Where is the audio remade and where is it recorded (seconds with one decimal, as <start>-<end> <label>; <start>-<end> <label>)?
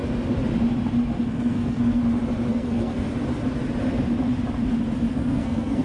0.0-1.3 recorded; 1.3-2.0 remade; 2.0-2.5 recorded; 2.5-3.1 remade; 3.1-5.1 recorded; 5.1-5.8 remade